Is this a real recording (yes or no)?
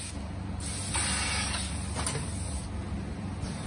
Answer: yes